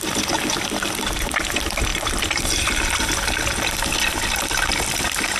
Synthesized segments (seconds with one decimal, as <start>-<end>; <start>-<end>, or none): none